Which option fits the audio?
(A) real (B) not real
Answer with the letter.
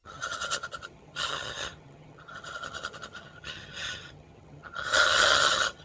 B